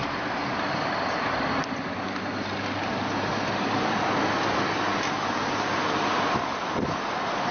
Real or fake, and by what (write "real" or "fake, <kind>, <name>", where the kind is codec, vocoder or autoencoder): real